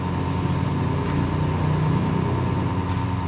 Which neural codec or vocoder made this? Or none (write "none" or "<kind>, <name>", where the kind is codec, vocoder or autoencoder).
none